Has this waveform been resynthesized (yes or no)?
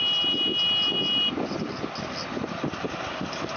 no